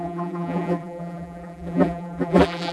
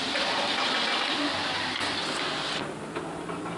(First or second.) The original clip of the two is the second